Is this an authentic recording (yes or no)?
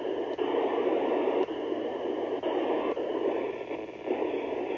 yes